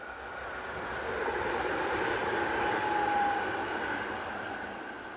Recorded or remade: recorded